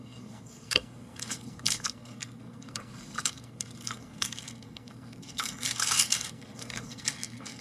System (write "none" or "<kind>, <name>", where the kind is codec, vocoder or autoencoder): codec, SNAC